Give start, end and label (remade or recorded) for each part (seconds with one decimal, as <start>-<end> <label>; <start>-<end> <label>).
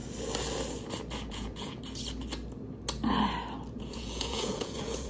0.0-1.3 recorded; 1.3-1.8 remade; 1.8-3.8 recorded; 3.8-5.1 remade